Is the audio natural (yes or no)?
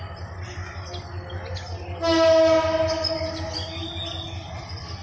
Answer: yes